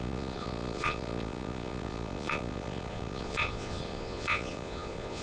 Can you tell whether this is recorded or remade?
remade